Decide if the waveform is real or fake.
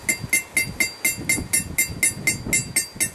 real